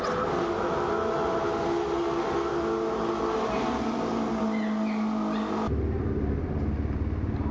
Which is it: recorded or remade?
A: recorded